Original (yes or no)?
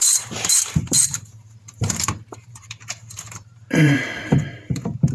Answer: no